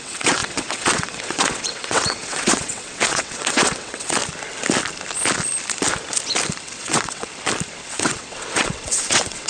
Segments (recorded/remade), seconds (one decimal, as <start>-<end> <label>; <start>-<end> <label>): 0.0-4.2 remade; 4.2-6.6 recorded; 6.6-7.3 remade; 7.3-7.9 recorded; 7.9-9.5 remade

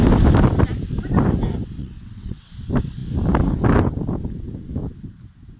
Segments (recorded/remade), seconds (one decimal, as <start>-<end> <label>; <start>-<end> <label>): 0.0-1.8 recorded; 1.8-2.5 remade; 2.5-5.6 recorded

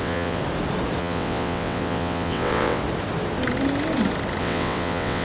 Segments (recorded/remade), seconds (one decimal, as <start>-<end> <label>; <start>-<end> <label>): 0.0-0.4 remade; 0.4-1.0 recorded; 1.0-2.8 remade; 2.8-4.4 recorded; 4.4-5.2 remade

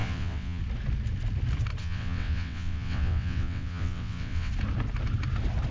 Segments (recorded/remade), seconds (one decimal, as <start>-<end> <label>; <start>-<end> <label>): 0.0-0.6 remade; 0.6-1.8 recorded; 1.8-4.5 remade; 4.5-5.7 recorded

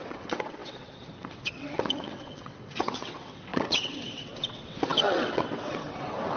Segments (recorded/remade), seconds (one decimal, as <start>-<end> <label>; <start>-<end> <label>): 0.0-6.4 remade

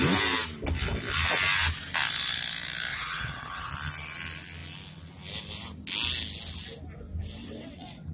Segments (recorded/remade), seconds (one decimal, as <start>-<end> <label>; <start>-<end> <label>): 0.0-2.9 recorded; 2.9-3.7 remade; 3.7-7.4 recorded; 7.4-8.1 remade

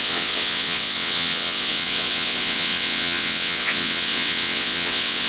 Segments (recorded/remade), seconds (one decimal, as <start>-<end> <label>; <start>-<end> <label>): 0.0-5.3 remade